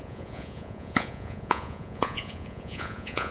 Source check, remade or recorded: remade